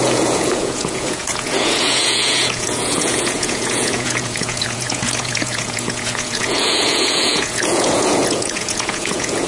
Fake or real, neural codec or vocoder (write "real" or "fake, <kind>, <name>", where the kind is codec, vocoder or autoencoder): fake, vocoder, Vocos